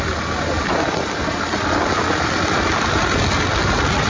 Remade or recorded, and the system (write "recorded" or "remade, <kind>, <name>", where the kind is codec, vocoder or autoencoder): recorded